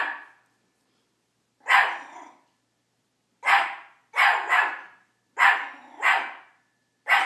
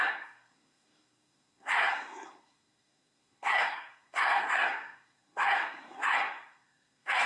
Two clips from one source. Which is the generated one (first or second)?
second